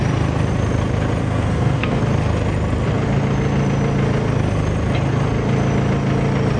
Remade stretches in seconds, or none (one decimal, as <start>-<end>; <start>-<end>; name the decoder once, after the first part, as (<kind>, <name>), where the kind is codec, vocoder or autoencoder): 1.2-2.0 (codec, SNAC)